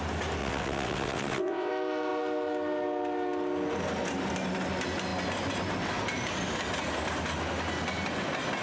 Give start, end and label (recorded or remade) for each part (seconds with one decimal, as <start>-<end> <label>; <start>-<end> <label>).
0.0-0.4 recorded; 0.4-1.7 remade; 1.7-8.6 recorded